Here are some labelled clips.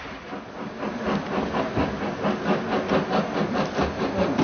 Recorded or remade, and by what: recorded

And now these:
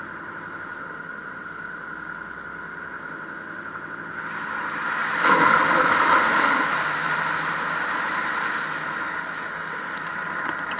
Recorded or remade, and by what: recorded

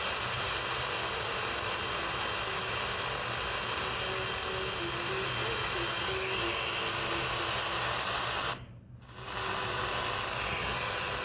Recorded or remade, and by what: recorded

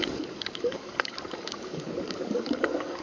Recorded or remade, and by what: remade, codec, DAC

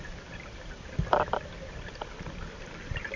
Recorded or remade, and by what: recorded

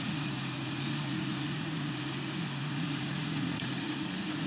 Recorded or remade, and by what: remade, vocoder, Vocos